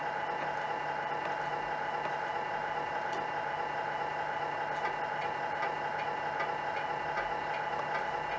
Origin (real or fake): real